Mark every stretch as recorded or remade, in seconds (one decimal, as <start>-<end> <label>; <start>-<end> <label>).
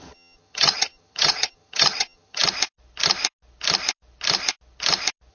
0.0-2.4 remade; 2.4-5.3 recorded